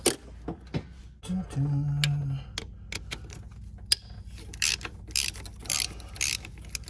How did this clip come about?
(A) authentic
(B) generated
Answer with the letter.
A